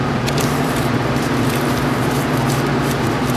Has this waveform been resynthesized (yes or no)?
yes